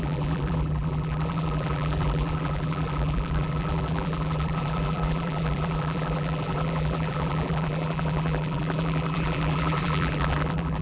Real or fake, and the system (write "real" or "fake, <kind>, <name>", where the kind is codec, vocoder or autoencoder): fake, vocoder, BigVGAN v2